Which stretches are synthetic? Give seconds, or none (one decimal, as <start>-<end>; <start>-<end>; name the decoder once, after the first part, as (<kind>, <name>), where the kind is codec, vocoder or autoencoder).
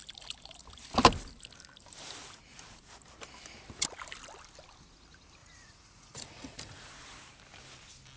5.4-6.9 (vocoder, Vocos)